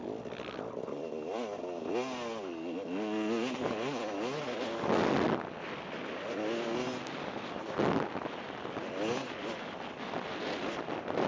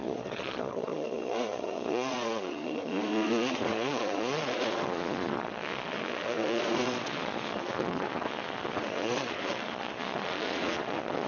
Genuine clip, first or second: first